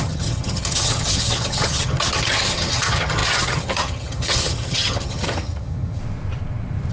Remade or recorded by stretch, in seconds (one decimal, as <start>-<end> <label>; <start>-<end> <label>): 0.0-6.0 remade; 6.0-6.9 recorded